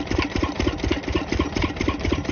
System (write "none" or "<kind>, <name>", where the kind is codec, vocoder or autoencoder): vocoder, BigVGAN v2